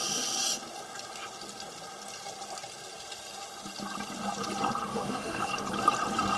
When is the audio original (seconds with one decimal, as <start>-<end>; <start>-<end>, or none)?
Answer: 0.0-4.9; 5.5-6.4

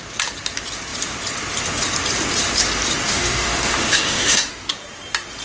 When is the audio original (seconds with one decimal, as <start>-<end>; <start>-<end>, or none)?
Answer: 0.0-3.1; 4.7-5.4

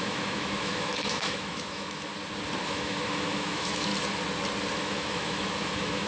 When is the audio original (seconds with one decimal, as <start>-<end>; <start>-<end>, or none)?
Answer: 2.1-2.6; 3.9-4.7

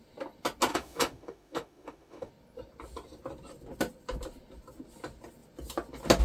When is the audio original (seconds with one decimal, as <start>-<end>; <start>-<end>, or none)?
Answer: 0.0-0.7; 2.3-6.2

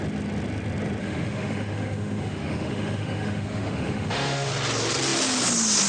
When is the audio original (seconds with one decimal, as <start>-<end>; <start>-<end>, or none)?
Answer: 0.0-1.0; 4.5-5.9

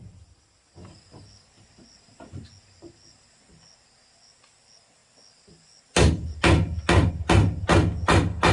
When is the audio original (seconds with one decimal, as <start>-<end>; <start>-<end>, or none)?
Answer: 0.0-8.5

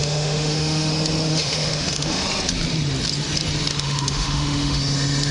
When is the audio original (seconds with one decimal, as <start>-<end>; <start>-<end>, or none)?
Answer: 0.9-1.3; 2.2-3.7; 4.8-5.3

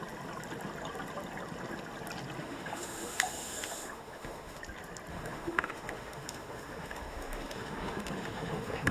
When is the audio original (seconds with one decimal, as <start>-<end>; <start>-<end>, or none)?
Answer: 0.0-2.4; 4.6-5.1